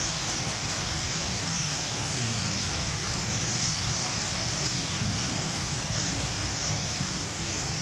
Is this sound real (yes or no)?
no